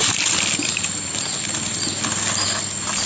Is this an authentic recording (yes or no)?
yes